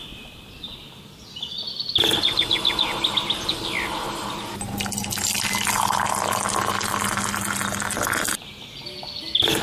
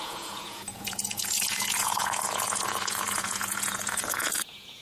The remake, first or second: second